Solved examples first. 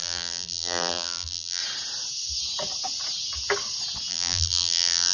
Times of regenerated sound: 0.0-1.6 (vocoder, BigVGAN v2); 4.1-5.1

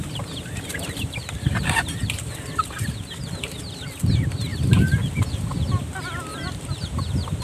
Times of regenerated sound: 0.0-3.6 (vocoder, BigVGAN v2); 4.5-5.4; 6.3-7.4

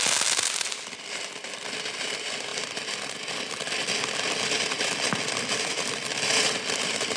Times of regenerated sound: none

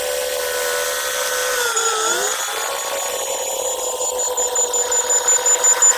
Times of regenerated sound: 1.4-2.4 (vocoder, BigVGAN v2)

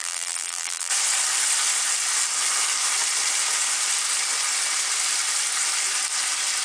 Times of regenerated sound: 0.0-0.9 (vocoder, BigVGAN v2)

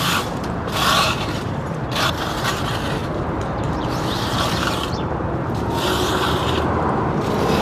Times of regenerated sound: 0.0-7.6 (vocoder, BigVGAN v2)

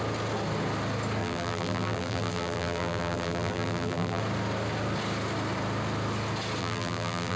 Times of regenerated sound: 1.2-4.2 (vocoder, BigVGAN v2); 6.6-7.4

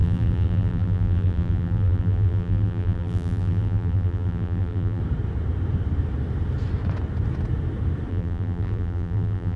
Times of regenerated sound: 0.0-5.0 (vocoder, BigVGAN v2); 8.1-9.6